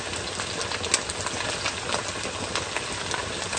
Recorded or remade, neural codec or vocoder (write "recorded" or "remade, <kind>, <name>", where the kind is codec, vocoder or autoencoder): recorded